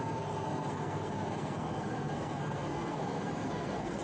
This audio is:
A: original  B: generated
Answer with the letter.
B